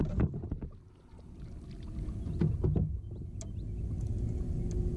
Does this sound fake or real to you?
real